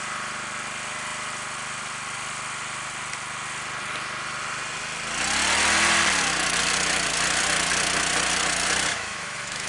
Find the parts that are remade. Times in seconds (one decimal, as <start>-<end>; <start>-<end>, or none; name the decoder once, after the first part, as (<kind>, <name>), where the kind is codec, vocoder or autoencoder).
8.9-9.7 (autoencoder, DAC-VAE)